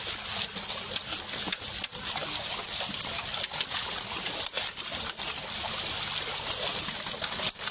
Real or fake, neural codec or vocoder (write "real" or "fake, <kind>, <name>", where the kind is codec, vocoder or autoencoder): real